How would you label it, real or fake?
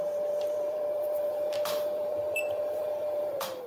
fake